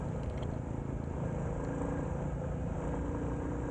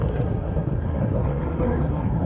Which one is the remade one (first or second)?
second